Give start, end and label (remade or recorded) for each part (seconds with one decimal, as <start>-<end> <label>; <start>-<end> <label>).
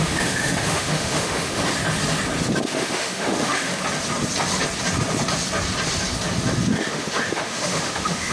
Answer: 0.0-1.6 remade; 1.6-2.6 recorded; 2.6-3.7 remade; 3.7-6.9 recorded; 6.9-8.3 remade